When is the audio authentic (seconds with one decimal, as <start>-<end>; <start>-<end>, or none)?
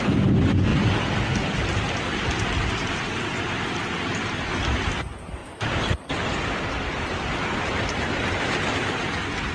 0.0-5.4; 8.5-9.5